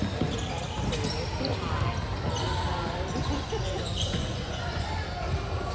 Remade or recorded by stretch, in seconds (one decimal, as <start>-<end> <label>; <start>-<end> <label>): 0.0-3.2 recorded; 3.2-4.9 remade; 4.9-5.7 recorded